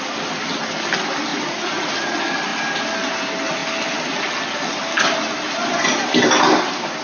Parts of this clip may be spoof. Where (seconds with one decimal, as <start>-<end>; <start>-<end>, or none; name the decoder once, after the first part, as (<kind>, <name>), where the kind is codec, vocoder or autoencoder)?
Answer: 1.3-1.9 (vocoder, Vocos)